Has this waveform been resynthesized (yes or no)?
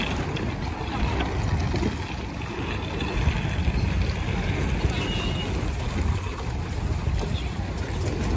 no